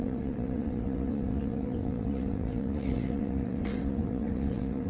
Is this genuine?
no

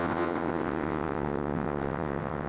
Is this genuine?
no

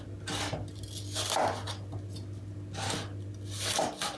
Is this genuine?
yes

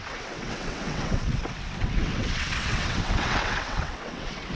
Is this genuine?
no